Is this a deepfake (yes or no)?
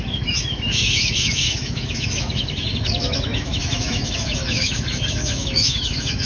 yes